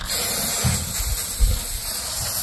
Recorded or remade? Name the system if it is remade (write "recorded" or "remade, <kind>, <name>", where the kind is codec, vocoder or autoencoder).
recorded